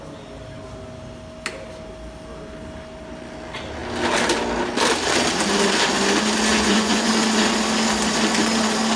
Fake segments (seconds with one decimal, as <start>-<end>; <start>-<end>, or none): 6.5-7.1